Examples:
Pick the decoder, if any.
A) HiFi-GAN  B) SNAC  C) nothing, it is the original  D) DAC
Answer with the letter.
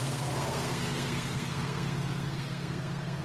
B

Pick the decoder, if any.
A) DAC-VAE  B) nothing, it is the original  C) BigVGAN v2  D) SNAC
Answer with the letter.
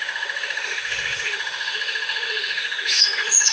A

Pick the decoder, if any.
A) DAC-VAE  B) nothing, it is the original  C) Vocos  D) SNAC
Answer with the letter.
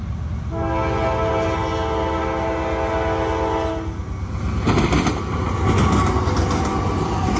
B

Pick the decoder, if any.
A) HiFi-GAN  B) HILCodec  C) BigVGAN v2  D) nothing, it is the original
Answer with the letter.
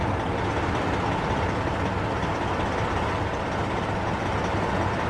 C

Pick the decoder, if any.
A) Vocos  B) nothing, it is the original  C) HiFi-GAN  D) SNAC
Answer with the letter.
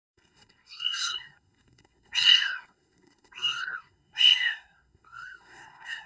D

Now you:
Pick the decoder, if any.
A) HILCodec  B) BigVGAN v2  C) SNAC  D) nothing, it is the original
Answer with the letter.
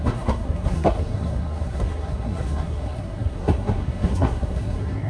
C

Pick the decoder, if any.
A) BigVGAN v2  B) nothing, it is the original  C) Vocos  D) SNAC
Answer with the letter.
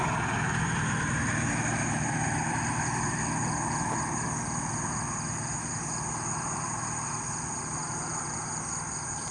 B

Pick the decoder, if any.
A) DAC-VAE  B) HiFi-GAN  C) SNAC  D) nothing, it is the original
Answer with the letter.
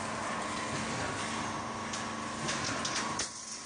D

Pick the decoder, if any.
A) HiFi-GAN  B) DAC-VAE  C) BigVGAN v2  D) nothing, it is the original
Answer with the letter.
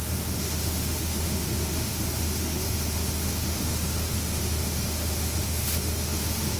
B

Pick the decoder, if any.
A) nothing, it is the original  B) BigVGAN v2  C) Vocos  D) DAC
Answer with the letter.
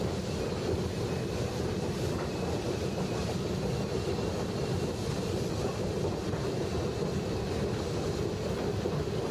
A